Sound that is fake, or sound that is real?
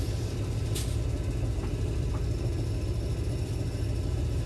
real